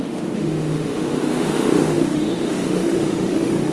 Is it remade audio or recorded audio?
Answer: remade